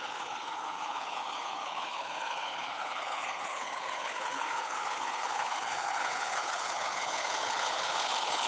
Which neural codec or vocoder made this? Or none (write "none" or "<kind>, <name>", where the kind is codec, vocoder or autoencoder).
codec, HILCodec